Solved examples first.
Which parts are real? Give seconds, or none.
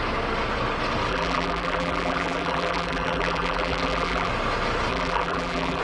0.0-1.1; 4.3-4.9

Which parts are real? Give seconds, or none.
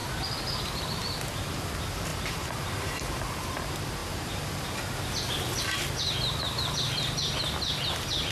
0.0-8.3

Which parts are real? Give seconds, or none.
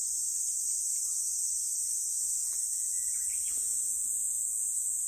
0.0-2.4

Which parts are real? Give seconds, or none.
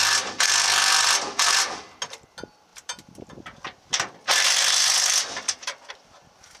1.6-2.7; 5.9-6.6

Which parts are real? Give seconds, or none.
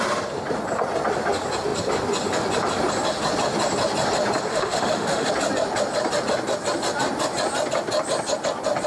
0.0-4.5; 5.3-8.9